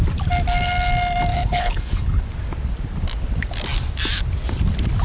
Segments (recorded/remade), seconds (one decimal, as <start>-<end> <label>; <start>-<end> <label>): 0.0-1.3 recorded; 1.3-2.2 remade; 2.2-5.0 recorded